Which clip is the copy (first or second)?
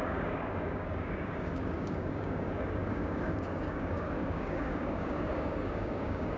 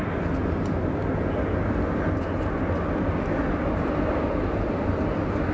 first